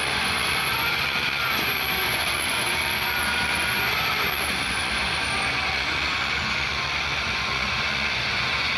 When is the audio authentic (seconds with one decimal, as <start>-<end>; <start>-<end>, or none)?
none